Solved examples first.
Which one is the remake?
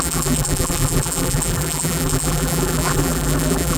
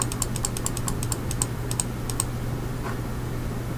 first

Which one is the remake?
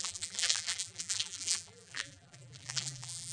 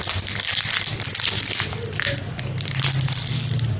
first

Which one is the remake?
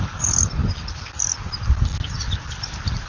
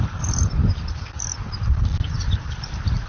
second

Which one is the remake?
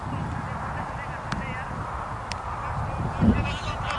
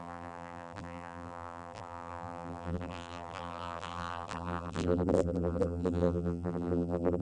second